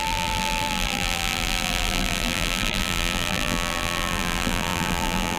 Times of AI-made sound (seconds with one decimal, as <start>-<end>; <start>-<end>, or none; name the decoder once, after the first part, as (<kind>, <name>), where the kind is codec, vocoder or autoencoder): 0.0-5.4 (vocoder, BigVGAN v2)